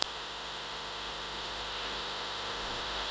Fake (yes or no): yes